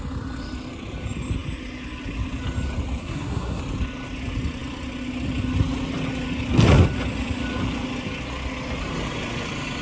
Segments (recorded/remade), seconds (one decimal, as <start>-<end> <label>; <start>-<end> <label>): 0.0-3.0 recorded; 3.0-3.6 remade; 3.6-9.8 recorded